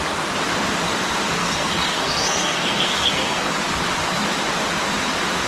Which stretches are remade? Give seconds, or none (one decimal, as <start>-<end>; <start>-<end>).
1.4-3.5